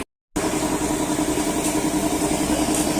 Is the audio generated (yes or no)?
no